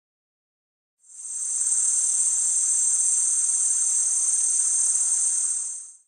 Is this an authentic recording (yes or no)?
no